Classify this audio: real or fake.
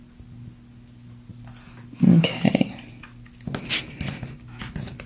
real